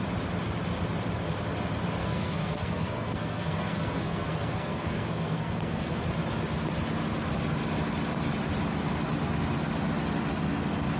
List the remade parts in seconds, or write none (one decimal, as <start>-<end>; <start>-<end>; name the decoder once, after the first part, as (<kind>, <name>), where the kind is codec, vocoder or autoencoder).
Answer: 2.0-6.0 (codec, SNAC)